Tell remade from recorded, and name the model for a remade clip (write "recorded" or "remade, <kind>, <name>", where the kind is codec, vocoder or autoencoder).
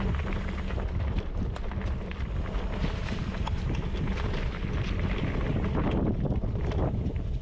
recorded